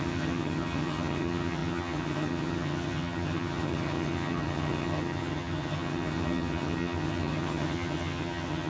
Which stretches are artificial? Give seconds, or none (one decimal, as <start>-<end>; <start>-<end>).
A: 0.0-8.7